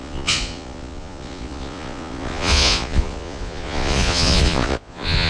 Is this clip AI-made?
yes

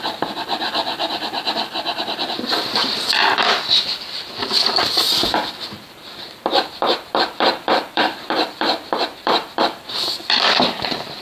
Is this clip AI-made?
yes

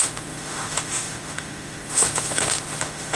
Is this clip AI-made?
yes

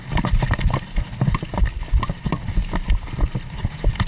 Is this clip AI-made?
no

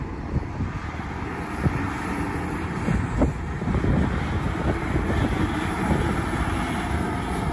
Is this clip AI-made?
no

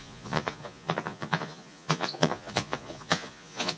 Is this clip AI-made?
yes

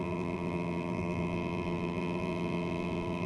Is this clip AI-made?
yes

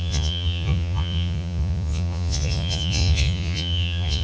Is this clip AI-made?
yes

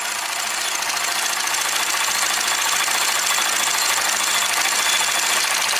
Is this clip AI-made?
no